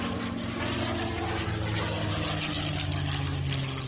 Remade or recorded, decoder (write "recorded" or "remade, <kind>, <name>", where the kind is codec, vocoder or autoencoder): recorded